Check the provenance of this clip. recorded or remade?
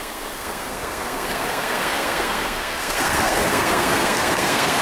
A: remade